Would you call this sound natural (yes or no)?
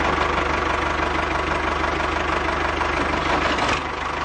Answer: yes